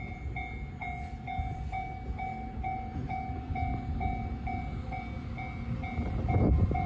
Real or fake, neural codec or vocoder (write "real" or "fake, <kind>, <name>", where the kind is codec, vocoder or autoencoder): real